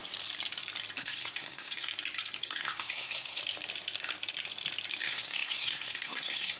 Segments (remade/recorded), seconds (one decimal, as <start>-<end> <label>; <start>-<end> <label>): 0.0-1.0 recorded; 1.0-1.9 remade; 1.9-2.4 recorded; 2.4-3.4 remade; 3.4-5.0 recorded; 5.0-6.6 remade